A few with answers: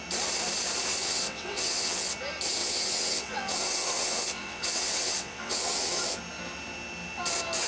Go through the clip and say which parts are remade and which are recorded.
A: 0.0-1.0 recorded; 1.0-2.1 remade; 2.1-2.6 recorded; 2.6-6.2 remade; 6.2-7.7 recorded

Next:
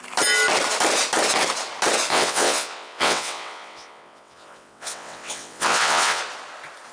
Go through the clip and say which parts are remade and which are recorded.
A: 0.0-2.1 recorded; 2.1-6.2 remade; 6.2-6.9 recorded

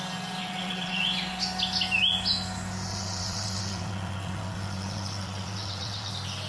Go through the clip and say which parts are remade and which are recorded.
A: 0.0-0.4 recorded; 0.4-1.0 remade; 1.0-2.9 recorded; 2.9-6.1 remade; 6.1-6.5 recorded

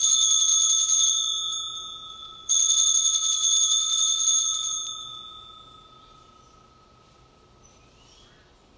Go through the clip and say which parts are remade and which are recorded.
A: 0.0-2.1 recorded; 2.1-3.3 remade; 3.3-8.8 recorded

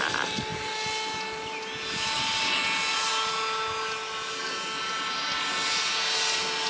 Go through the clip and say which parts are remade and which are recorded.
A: 0.0-6.7 recorded

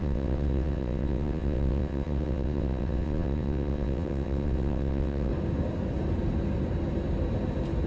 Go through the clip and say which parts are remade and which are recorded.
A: 0.0-5.3 remade; 5.3-7.9 recorded

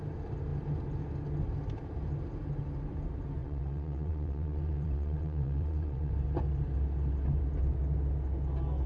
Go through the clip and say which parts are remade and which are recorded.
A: 0.0-3.4 recorded; 3.4-6.1 remade; 6.1-8.9 recorded

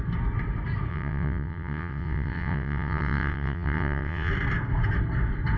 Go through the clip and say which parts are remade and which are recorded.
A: 0.0-0.9 recorded; 0.9-4.3 remade; 4.3-5.6 recorded